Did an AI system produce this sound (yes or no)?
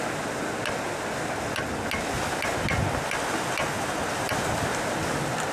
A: no